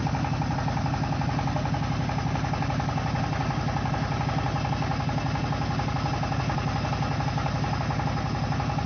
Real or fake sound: real